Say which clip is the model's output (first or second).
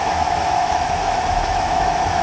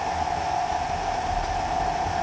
first